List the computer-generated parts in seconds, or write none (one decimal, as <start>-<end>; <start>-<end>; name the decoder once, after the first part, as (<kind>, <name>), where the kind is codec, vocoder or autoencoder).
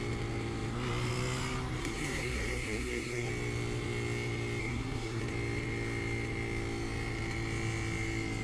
1.8-3.3 (codec, SNAC); 4.6-5.2